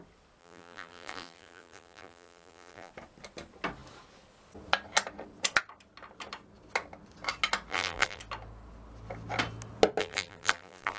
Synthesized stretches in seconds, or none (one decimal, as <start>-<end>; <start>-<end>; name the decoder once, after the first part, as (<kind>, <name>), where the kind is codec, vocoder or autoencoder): 0.4-2.9 (vocoder, BigVGAN v2); 7.7-8.2; 10.0-11.0

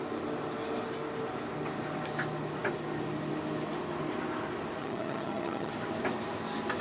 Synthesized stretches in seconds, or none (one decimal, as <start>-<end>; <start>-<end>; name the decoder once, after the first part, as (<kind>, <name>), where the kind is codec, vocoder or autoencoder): 4.8-5.7 (vocoder, HiFi-GAN)

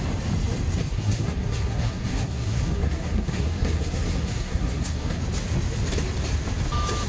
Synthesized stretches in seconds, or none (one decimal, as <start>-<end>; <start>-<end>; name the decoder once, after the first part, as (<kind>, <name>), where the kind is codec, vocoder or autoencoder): 0.9-5.2 (codec, SNAC)

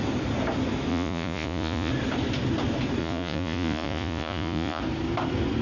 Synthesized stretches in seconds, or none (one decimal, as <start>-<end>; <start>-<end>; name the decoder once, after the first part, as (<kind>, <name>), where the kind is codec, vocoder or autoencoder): 0.9-1.9 (vocoder, Vocos); 3.0-4.8

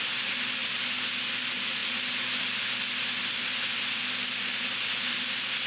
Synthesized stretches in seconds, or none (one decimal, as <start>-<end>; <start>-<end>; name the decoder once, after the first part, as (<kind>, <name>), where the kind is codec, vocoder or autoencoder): none

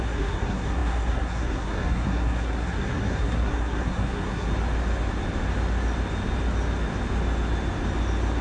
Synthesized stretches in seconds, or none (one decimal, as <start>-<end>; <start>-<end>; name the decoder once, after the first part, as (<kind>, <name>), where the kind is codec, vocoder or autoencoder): 0.0-4.5 (codec, SNAC)

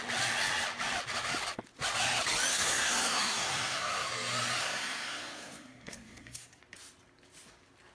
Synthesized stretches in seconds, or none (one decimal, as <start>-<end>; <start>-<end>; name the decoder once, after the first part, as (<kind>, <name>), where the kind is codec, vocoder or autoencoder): 2.5-4.1 (codec, SNAC); 4.6-6.6

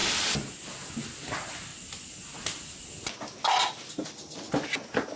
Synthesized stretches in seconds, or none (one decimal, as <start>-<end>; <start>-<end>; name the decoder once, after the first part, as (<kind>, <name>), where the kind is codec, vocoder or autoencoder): none